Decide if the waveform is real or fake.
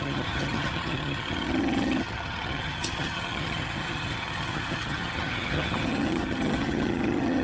fake